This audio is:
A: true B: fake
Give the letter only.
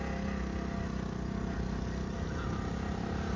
A